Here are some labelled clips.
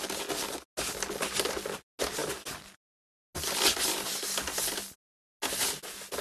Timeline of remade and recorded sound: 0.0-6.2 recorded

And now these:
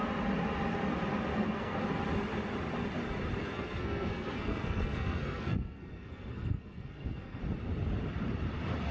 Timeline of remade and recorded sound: 0.0-1.3 recorded; 1.3-1.8 remade; 1.8-3.4 recorded; 3.4-7.4 remade; 7.4-8.9 recorded

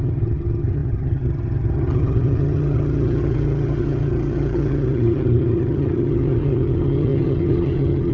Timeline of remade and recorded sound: 0.0-8.1 remade

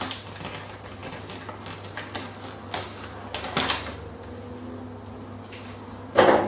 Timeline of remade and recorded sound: 0.0-6.5 recorded

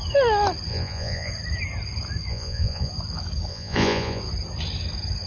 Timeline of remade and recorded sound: 0.0-0.7 recorded; 0.7-1.3 remade; 1.3-2.3 recorded; 2.3-2.9 remade; 2.9-3.5 recorded; 3.5-4.2 remade; 4.2-5.3 recorded

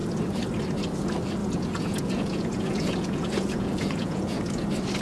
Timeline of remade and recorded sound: 0.0-1.4 recorded; 1.4-4.4 remade; 4.4-5.0 recorded